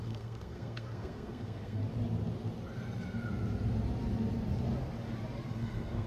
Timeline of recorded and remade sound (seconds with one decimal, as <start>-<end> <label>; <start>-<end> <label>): 0.0-1.8 remade; 1.8-5.5 recorded; 5.5-6.1 remade